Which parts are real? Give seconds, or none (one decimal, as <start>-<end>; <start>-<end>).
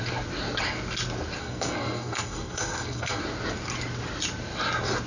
0.0-1.4; 3.2-5.1